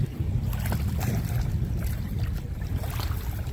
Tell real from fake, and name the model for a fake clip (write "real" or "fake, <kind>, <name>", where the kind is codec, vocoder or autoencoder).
fake, vocoder, BigVGAN v2